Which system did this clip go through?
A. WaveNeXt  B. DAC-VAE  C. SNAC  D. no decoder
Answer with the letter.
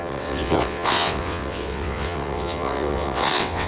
A